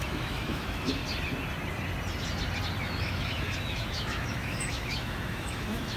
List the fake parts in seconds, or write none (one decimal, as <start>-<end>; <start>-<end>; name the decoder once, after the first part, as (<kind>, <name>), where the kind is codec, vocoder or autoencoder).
0.0-1.0 (autoencoder, DAC-VAE); 2.8-6.0